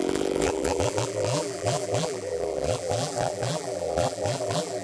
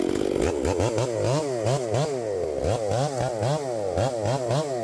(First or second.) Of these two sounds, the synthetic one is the first